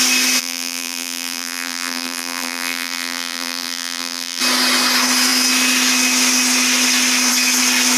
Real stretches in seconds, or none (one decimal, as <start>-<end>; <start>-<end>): 0.0-0.4; 4.4-8.0